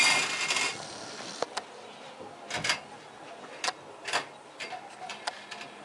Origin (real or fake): real